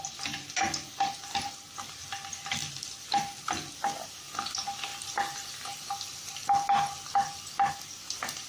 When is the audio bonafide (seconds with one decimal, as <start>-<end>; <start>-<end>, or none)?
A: 0.0-1.3; 2.0-2.6; 3.7-4.9; 7.7-8.5